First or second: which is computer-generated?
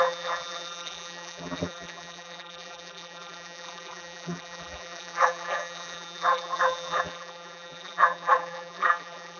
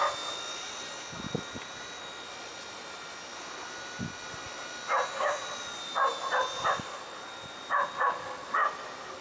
first